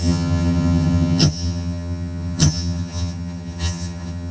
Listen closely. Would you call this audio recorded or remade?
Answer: remade